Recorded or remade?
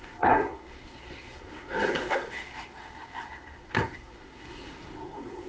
remade